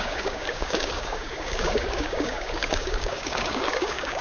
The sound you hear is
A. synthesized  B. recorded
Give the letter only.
A